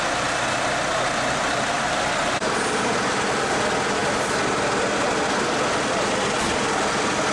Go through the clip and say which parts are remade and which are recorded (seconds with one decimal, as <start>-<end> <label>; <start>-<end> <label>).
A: 0.0-7.3 recorded

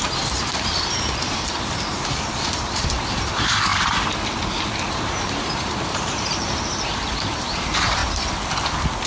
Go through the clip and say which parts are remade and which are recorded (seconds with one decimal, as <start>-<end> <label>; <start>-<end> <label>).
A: 0.0-3.7 remade; 3.7-4.9 recorded; 4.9-8.0 remade; 8.0-9.1 recorded

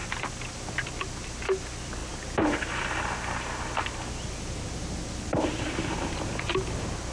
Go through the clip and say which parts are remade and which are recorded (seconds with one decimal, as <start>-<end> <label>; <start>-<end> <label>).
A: 0.0-7.1 recorded

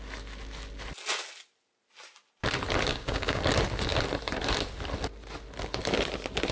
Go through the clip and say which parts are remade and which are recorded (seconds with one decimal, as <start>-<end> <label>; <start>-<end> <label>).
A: 0.0-2.9 recorded; 2.9-3.4 remade; 3.4-6.5 recorded

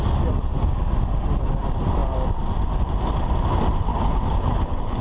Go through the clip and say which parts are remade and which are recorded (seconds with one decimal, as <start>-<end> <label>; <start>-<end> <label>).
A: 0.0-3.9 recorded; 3.9-5.0 remade

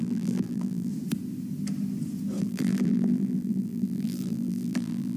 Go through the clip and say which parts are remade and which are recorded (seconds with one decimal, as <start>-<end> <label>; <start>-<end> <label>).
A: 0.0-0.9 remade; 0.9-2.4 recorded; 2.4-5.2 remade

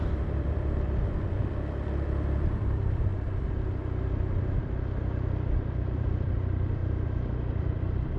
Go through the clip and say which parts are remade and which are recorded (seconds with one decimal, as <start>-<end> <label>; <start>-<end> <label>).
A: 0.0-3.1 remade; 3.1-4.6 recorded; 4.6-8.2 remade

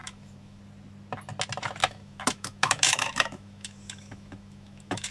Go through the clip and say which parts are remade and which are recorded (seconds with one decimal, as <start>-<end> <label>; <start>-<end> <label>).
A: 0.0-0.6 remade; 0.6-1.8 recorded; 1.8-5.1 remade